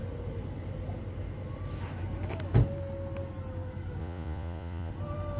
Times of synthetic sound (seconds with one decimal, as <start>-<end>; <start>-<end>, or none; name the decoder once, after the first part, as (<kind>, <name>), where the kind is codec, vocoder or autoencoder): 4.0-4.9 (vocoder, Vocos)